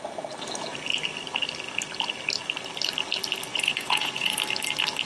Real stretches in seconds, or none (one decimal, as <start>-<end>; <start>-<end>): 0.0-3.5; 4.4-5.1